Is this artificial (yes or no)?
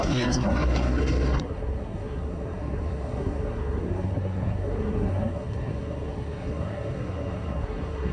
yes